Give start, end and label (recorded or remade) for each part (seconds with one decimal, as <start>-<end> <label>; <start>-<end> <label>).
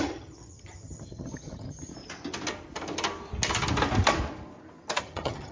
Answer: 0.0-1.9 remade; 1.9-5.0 recorded; 5.0-5.5 remade